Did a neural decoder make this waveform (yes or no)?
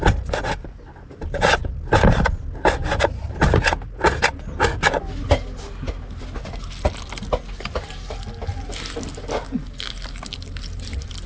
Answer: no